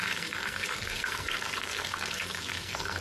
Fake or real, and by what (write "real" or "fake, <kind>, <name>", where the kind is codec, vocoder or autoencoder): fake, codec, SNAC